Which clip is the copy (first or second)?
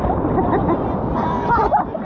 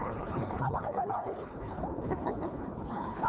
second